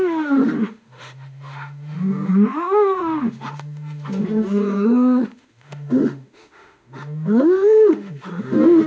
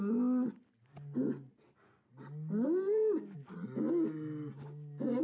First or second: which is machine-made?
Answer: first